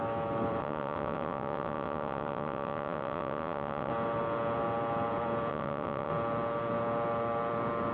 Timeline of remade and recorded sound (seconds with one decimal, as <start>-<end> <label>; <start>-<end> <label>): 0.0-0.6 recorded; 0.6-3.9 remade; 3.9-5.5 recorded; 5.5-6.1 remade; 6.1-7.9 recorded